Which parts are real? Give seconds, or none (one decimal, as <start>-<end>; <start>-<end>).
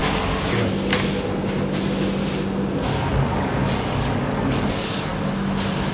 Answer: 0.0-3.1; 5.1-5.9